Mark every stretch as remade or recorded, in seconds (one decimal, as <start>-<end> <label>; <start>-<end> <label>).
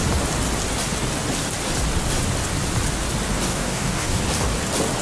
0.0-3.5 recorded; 3.5-4.2 remade; 4.2-5.0 recorded